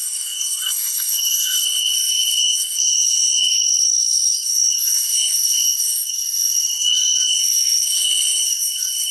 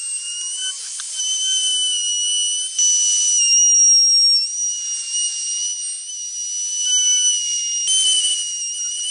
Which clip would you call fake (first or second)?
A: first